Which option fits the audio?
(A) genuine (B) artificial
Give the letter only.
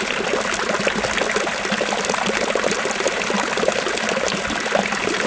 A